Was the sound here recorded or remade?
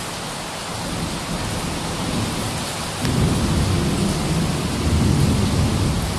recorded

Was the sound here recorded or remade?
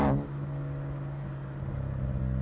recorded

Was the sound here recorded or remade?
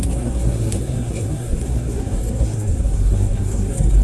remade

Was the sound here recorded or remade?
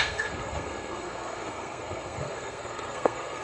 remade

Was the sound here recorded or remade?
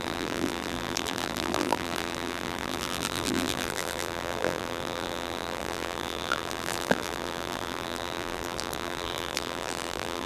remade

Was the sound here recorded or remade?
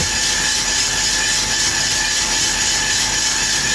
recorded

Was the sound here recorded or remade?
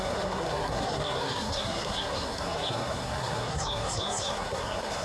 remade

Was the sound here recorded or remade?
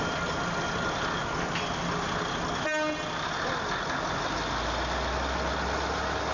recorded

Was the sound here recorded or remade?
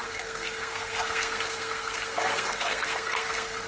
remade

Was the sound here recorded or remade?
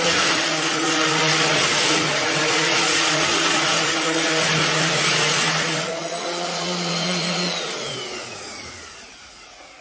remade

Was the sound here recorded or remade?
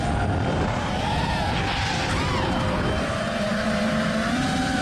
remade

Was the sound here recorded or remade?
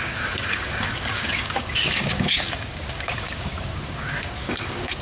remade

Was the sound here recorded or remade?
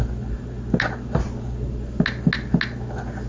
recorded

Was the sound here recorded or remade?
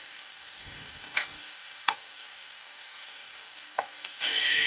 remade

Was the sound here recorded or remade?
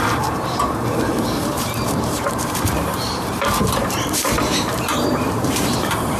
remade